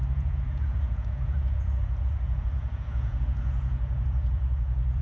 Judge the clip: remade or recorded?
remade